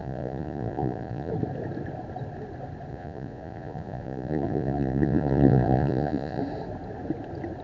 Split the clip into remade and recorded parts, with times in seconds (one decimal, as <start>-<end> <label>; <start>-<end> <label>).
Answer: 0.0-1.3 remade; 1.3-2.9 recorded; 2.9-6.4 remade; 6.4-7.6 recorded